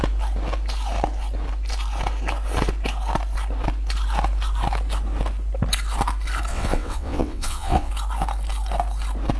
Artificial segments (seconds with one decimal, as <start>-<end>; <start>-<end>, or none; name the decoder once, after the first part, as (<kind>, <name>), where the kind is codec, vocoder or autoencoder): 6.5-7.9 (vocoder, WaveNeXt)